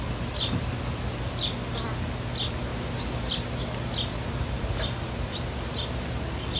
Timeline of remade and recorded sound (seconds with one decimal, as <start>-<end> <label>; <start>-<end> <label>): 0.0-6.6 recorded